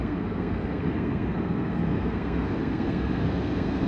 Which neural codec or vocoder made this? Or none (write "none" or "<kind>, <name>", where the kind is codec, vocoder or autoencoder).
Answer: codec, SNAC